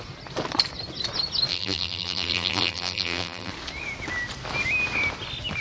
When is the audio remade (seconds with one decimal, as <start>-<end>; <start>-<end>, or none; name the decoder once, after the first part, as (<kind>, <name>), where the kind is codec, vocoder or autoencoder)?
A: 1.5-3.5 (vocoder, BigVGAN v2)

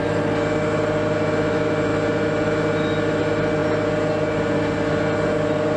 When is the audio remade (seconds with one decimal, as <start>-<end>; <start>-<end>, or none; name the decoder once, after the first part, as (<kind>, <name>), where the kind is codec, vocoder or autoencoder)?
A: none

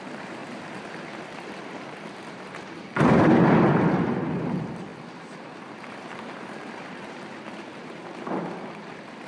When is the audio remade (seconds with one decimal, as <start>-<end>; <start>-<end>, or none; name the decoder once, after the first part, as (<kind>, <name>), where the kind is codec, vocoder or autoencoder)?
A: 0.0-9.3 (vocoder, BigVGAN v2)

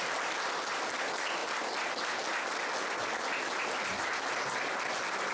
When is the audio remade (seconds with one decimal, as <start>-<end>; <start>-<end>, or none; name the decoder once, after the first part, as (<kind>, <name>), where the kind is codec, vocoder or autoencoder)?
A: none

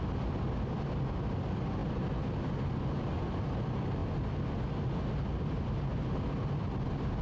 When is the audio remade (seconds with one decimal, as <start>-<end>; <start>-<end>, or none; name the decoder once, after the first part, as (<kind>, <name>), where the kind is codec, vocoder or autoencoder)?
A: none

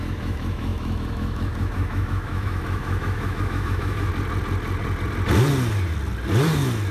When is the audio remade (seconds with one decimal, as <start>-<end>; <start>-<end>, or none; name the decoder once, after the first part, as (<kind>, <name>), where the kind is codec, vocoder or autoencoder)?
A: 0.0-4.1 (autoencoder, DAC-VAE)

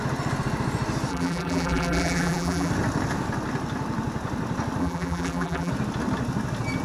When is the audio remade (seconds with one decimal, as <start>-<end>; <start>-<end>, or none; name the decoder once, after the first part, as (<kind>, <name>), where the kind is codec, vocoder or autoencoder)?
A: 1.1-2.7 (vocoder, BigVGAN v2); 4.8-5.7